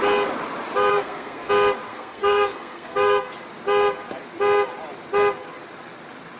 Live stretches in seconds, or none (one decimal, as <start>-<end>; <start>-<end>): 0.0-0.9; 1.5-1.9; 3.3-6.4